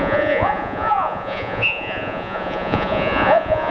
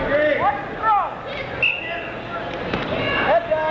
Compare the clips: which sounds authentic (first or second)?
second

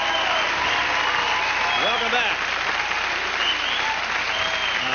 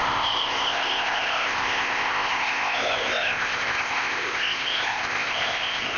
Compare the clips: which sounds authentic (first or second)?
first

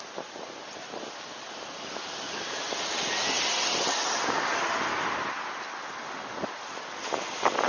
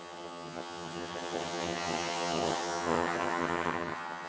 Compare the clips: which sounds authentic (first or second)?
first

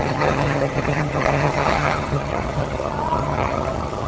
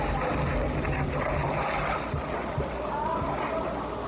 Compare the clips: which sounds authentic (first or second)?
second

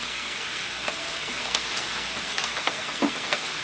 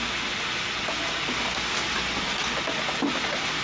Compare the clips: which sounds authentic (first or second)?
second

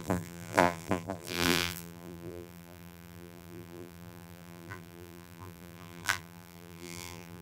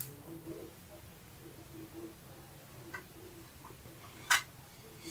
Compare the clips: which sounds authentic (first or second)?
second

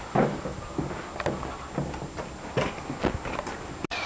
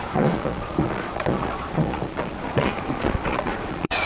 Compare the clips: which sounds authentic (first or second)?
first